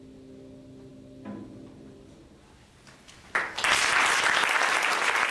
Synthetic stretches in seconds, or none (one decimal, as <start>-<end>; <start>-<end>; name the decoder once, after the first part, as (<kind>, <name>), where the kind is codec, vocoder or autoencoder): none